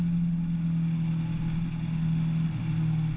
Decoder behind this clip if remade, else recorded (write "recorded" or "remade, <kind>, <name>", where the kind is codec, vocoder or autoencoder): recorded